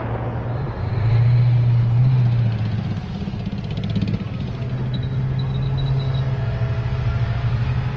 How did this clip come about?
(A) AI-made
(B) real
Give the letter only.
B